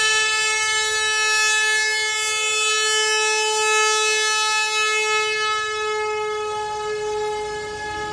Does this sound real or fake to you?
real